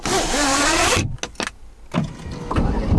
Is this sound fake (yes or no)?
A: no